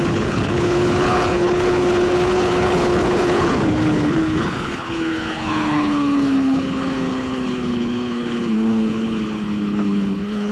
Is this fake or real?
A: fake